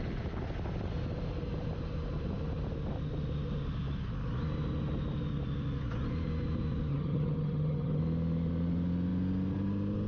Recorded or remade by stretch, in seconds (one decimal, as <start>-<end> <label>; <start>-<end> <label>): 0.0-6.9 recorded; 6.9-8.0 remade; 8.0-10.1 recorded